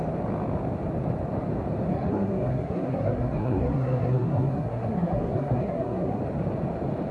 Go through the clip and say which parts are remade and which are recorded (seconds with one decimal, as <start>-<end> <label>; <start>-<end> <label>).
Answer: 0.0-1.9 recorded; 1.9-6.2 remade; 6.2-7.1 recorded